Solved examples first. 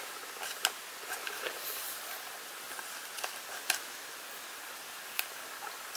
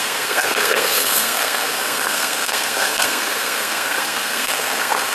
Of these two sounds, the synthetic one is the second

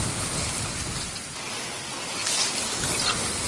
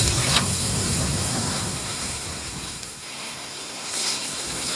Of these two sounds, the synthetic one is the second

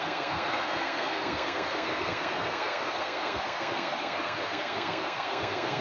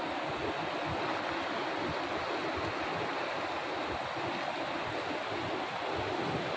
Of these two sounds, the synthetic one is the first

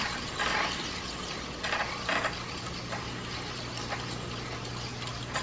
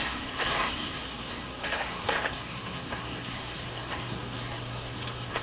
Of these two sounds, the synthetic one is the second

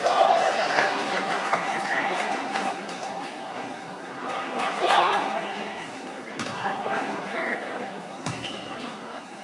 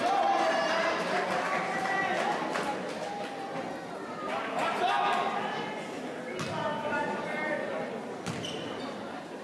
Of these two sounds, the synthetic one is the first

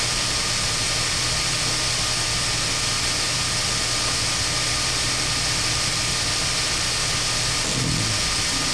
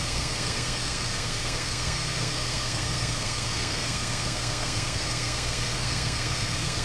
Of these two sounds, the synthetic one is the second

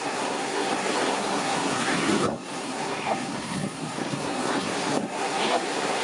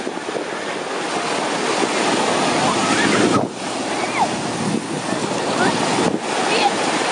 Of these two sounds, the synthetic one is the first